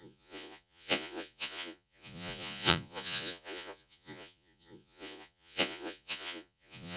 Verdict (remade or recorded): remade